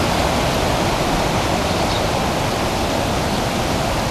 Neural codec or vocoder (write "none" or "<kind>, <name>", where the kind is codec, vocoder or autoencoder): none